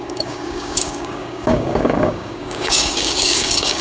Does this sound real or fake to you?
fake